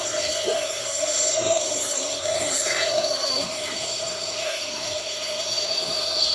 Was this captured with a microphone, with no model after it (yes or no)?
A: no